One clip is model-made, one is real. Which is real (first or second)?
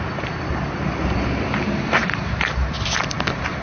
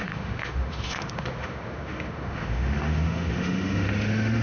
first